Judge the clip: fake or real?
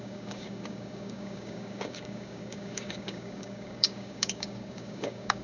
fake